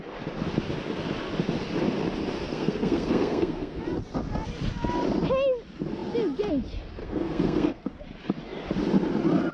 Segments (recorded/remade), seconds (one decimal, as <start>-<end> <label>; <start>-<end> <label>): 0.0-2.5 recorded; 2.5-3.8 remade; 3.8-7.0 recorded; 7.0-7.8 remade; 7.8-9.5 recorded